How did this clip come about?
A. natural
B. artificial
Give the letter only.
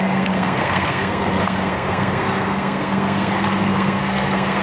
B